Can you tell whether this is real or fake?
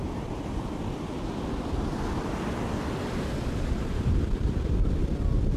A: fake